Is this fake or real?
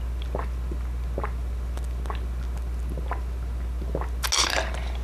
real